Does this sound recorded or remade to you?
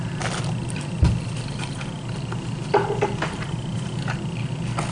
recorded